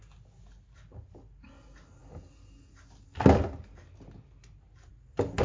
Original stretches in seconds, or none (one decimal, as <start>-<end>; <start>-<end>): 0.0-5.4